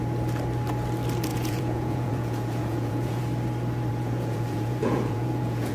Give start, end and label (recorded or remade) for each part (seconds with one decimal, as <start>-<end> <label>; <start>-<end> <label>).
0.0-1.3 recorded; 1.3-3.2 remade; 3.2-3.9 recorded; 3.9-5.7 remade